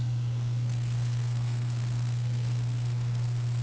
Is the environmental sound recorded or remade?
remade